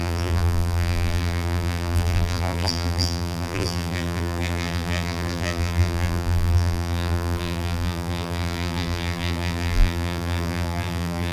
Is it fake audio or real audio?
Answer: fake